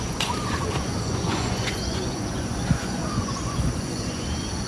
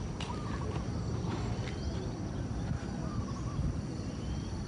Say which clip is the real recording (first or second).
second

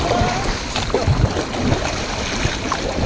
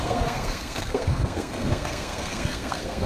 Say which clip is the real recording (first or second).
first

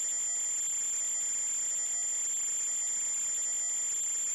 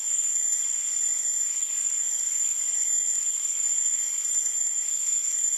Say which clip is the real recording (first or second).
first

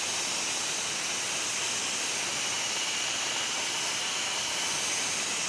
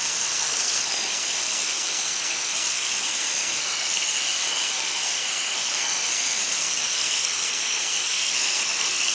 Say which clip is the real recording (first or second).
first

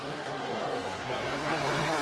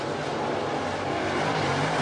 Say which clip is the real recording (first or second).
second